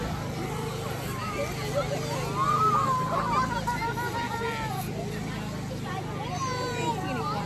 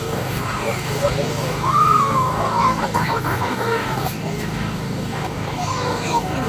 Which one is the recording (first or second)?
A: first